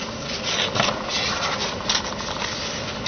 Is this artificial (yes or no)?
no